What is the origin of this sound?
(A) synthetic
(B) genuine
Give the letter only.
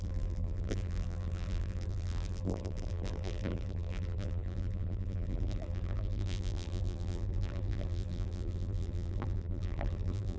A